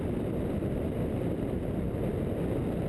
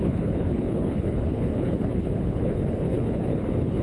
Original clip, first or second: first